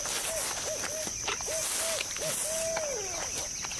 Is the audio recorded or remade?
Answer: recorded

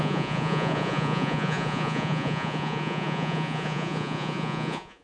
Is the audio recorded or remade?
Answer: remade